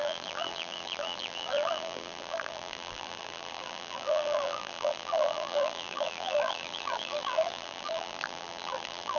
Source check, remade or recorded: remade